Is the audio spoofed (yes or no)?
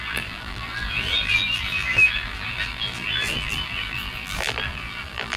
yes